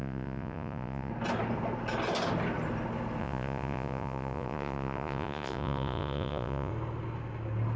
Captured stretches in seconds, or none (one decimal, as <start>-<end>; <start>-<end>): 1.1-3.2; 6.7-7.8